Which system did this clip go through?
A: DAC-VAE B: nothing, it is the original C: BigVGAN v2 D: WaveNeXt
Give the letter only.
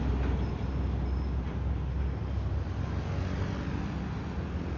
B